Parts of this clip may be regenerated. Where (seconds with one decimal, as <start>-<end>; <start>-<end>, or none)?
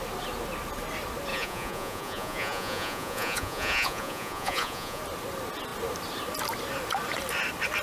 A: 1.3-5.0